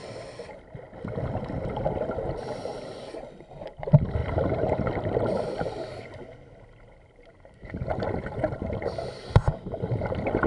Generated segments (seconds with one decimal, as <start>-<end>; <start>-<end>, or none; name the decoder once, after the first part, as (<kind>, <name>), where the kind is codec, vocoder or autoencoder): 0.0-1.4 (vocoder, BigVGAN v2); 4.2-5.7